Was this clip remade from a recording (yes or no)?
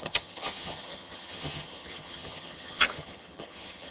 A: yes